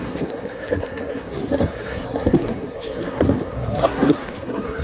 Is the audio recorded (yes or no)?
no